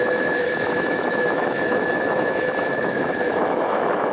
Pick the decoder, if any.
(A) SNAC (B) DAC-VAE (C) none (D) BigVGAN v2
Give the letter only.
B